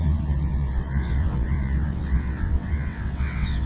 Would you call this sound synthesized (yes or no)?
yes